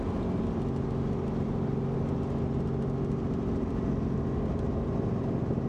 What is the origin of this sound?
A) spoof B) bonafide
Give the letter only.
B